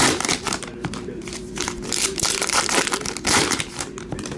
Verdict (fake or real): fake